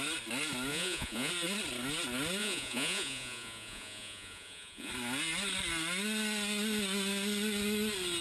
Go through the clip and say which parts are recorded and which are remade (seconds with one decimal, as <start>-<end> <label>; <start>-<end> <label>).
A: 0.0-0.7 recorded; 0.7-1.3 remade; 1.3-2.4 recorded; 2.4-4.9 remade; 4.9-8.2 recorded